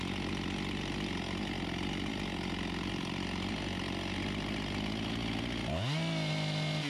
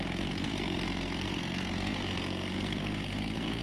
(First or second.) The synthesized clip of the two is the second